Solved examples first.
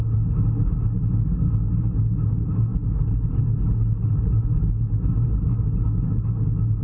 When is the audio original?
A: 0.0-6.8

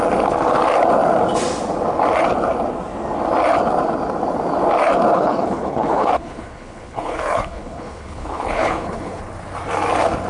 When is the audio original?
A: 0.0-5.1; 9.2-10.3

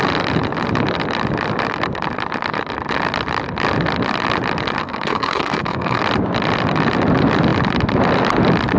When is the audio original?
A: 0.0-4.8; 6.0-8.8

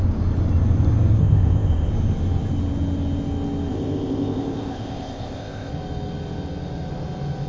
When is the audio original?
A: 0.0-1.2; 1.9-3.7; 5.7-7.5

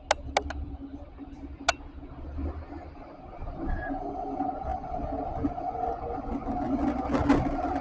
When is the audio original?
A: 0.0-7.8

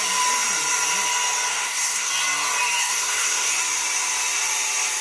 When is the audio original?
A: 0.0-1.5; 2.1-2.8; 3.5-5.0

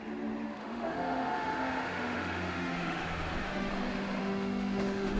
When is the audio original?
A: 0.0-0.6; 3.7-4.2